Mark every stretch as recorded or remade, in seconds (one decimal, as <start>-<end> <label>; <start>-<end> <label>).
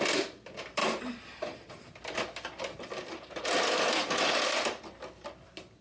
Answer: 0.0-5.8 recorded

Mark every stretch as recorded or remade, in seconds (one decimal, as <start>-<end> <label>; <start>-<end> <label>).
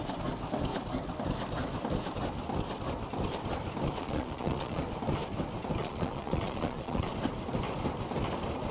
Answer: 0.0-4.0 recorded; 4.0-4.8 remade; 4.8-5.8 recorded; 5.8-7.1 remade; 7.1-8.7 recorded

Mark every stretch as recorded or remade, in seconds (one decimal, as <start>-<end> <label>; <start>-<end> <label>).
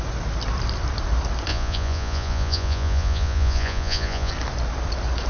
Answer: 0.0-1.5 recorded; 1.5-4.3 remade; 4.3-5.3 recorded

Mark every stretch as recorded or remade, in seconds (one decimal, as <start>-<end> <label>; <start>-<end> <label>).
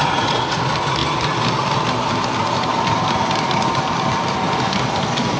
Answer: 0.0-0.6 remade; 0.6-5.4 recorded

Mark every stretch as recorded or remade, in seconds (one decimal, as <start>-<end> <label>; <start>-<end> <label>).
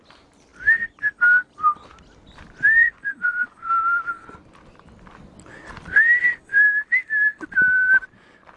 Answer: 0.0-2.8 recorded; 2.8-3.7 remade; 3.7-8.6 recorded